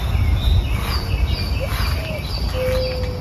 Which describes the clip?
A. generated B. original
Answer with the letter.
B